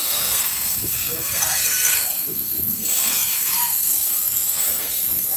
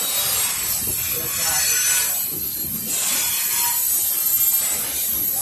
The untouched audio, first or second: second